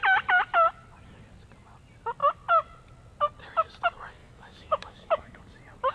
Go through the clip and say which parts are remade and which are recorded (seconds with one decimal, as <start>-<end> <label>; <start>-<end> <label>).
0.0-4.2 recorded; 4.2-5.4 remade; 5.4-5.9 recorded